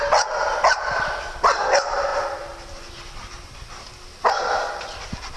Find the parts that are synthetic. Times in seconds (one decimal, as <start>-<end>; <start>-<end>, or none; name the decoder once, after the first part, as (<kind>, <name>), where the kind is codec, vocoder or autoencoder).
none